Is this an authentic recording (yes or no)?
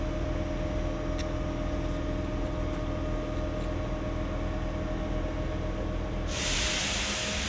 yes